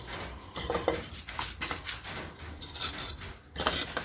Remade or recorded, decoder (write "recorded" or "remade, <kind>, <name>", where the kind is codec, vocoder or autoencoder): recorded